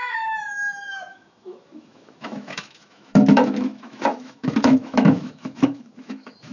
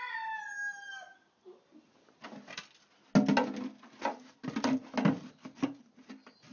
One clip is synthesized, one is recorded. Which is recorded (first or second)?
second